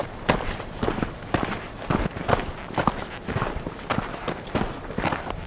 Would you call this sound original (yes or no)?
no